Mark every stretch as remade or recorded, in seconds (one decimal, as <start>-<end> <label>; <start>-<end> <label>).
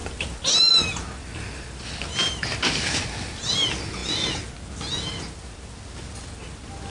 0.0-6.9 recorded